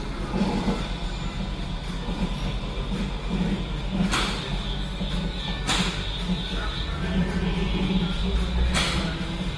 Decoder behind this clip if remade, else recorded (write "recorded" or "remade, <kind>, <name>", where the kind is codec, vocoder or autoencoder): recorded